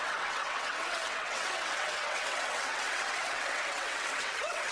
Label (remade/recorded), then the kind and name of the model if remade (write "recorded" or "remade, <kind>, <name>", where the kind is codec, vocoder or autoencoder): remade, vocoder, WaveNeXt